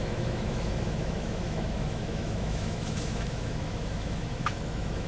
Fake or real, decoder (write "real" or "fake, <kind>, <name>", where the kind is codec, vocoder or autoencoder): fake, autoencoder, DAC-VAE